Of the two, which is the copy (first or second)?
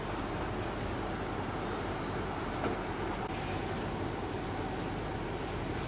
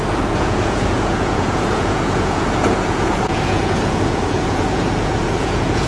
second